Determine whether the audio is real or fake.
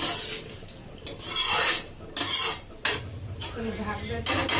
real